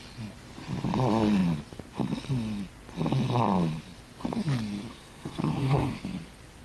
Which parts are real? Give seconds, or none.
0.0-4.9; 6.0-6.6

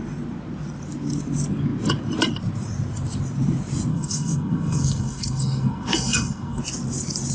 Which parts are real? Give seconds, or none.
0.0-3.9; 6.6-7.3